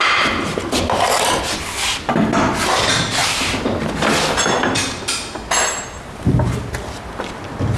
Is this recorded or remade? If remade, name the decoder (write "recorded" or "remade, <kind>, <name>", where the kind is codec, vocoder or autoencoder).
recorded